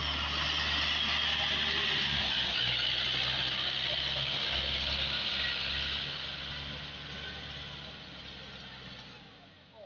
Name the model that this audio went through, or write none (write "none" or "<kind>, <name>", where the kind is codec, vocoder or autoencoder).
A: none